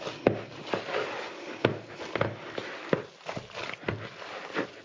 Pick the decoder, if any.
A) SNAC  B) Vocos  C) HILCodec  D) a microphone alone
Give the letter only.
D